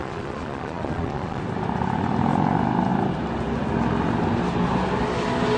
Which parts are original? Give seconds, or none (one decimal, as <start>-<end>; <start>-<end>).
1.4-5.6

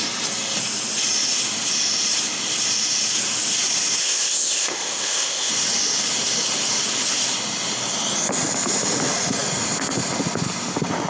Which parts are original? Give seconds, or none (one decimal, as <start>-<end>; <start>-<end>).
0.0-4.0; 5.5-11.1

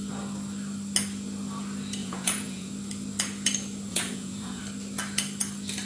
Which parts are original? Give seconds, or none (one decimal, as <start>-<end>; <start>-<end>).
0.0-2.0; 2.7-3.9; 4.6-5.9

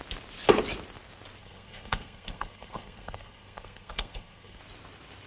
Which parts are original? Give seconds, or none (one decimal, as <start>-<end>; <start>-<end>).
0.0-1.4; 4.6-5.3

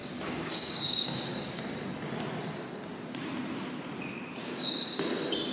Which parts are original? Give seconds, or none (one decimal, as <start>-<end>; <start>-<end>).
1.6-4.4; 5.0-5.5